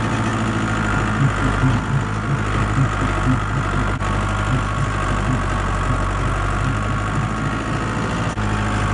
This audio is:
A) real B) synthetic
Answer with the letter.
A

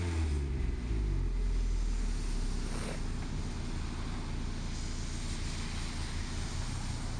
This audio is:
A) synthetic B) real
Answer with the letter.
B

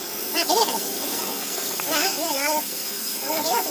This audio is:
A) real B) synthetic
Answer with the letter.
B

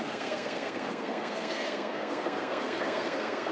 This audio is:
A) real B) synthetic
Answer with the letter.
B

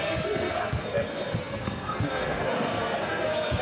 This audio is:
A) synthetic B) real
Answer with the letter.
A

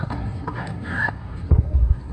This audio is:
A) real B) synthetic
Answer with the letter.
B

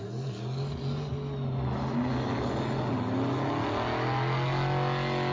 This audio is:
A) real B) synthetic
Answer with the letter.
A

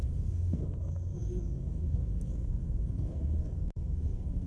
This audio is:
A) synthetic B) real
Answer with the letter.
A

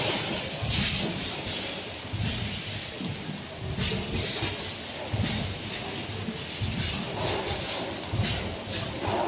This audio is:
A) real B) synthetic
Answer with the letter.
A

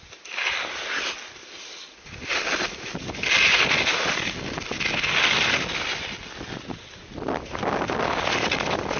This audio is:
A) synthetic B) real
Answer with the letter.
B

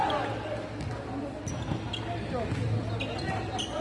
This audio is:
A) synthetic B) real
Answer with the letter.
B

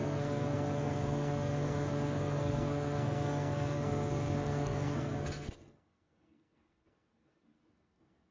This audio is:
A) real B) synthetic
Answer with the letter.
B